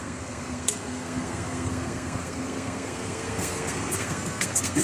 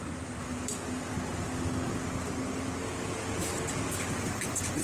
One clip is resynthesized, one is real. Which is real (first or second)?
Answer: second